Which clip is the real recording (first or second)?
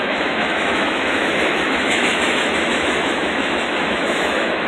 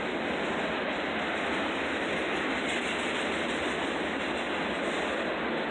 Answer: second